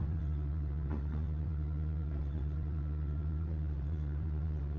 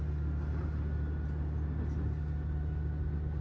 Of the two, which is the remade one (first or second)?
first